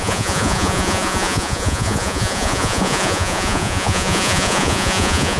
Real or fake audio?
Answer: fake